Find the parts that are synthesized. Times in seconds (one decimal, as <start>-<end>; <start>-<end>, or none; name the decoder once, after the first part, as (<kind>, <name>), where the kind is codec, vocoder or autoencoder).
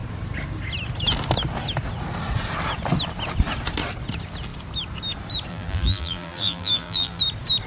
5.5-7.2 (vocoder, BigVGAN v2)